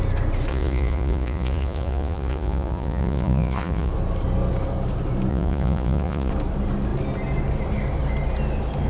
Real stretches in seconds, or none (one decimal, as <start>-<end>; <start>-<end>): 0.0-0.5; 3.9-5.3; 6.3-8.9